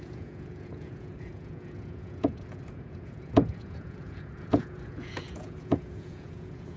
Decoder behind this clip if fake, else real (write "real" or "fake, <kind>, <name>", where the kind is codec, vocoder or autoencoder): fake, vocoder, Vocos